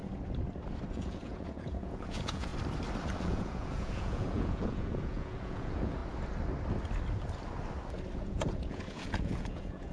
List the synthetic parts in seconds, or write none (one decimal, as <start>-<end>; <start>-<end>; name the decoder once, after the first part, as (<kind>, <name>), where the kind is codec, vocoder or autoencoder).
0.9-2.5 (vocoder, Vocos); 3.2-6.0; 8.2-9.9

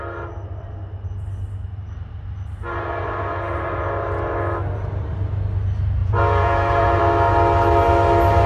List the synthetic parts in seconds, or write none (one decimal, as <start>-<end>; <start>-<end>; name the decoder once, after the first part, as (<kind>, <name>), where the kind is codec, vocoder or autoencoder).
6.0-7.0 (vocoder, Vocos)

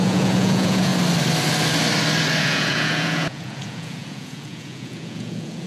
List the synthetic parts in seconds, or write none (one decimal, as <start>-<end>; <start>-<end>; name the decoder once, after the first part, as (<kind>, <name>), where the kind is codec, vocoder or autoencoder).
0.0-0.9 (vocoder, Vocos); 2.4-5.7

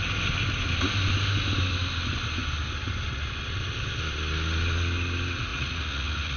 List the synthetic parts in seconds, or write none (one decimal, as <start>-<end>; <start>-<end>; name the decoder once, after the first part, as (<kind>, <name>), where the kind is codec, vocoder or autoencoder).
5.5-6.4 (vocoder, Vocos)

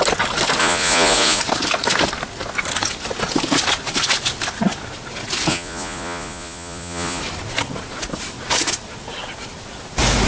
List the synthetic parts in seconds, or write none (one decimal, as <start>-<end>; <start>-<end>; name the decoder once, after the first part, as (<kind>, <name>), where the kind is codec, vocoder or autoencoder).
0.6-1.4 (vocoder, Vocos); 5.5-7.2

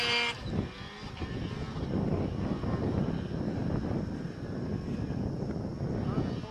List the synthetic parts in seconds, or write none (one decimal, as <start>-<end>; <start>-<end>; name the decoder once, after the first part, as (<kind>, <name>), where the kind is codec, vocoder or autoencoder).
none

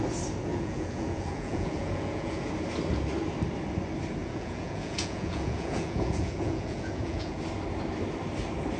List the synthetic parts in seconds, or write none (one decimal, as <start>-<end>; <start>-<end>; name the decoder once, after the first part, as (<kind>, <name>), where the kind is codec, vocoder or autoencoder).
0.5-2.5 (vocoder, Vocos); 4.2-7.4